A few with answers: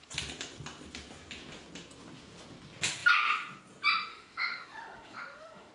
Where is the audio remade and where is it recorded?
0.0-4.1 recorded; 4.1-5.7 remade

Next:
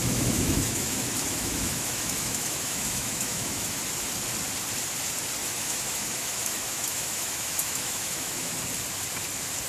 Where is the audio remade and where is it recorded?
0.0-3.8 remade; 3.8-5.4 recorded; 5.4-8.5 remade; 8.5-9.7 recorded

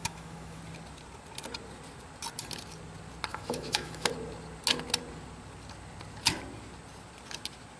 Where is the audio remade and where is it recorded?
0.0-0.6 remade; 0.6-3.3 recorded; 3.3-4.1 remade; 4.1-7.8 recorded

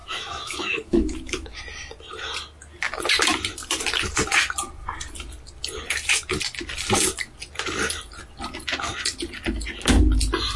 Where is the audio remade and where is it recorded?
0.0-1.6 remade; 1.6-10.6 recorded

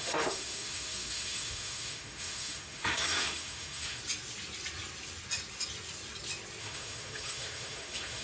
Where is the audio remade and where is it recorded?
0.0-4.0 remade; 4.0-6.6 recorded; 6.6-8.2 remade

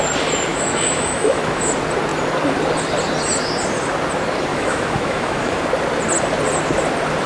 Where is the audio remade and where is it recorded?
0.0-0.5 recorded; 0.5-1.7 remade; 1.7-4.5 recorded; 4.5-5.6 remade; 5.6-7.3 recorded

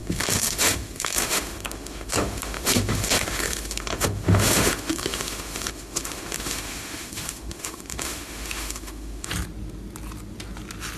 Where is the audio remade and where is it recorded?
0.0-9.3 remade; 9.3-11.0 recorded